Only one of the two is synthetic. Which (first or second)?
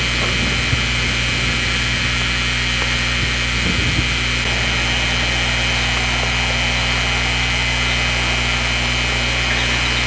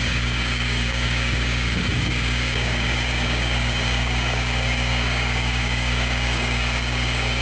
second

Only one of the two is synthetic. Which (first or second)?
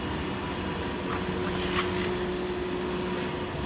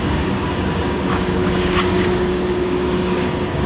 second